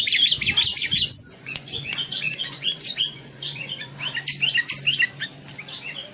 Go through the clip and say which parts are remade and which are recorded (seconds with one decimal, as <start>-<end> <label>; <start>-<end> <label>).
0.0-0.7 recorded; 0.7-3.9 remade; 3.9-6.1 recorded